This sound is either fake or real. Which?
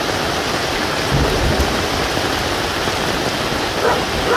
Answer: real